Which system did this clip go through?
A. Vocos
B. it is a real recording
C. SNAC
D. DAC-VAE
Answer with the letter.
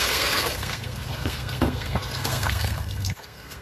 C